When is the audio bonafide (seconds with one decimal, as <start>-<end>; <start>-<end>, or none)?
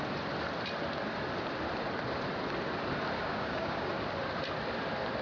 0.0-3.2; 3.9-5.2